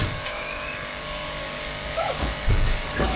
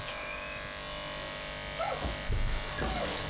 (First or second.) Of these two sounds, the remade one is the first